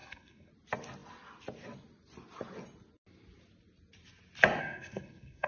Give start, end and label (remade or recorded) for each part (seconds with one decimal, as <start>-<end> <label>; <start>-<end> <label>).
0.0-0.5 remade; 0.5-4.6 recorded; 4.6-5.5 remade